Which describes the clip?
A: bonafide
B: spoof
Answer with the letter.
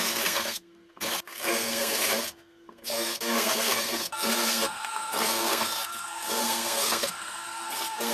B